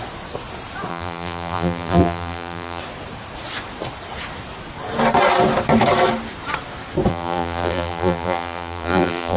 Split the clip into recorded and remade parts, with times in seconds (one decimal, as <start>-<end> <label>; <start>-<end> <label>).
0.0-0.9 recorded; 0.9-2.8 remade; 2.8-7.1 recorded; 7.1-9.4 remade